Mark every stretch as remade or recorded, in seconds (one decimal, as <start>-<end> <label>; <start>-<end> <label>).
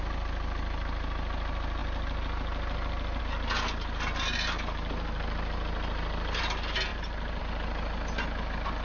0.0-8.8 recorded